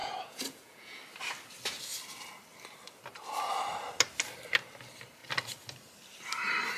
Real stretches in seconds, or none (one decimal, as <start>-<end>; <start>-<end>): 1.0-6.8